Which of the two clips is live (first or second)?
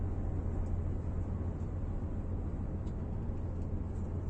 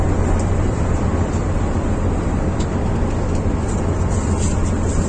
first